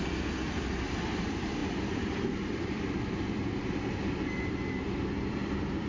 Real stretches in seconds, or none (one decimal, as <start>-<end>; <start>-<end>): none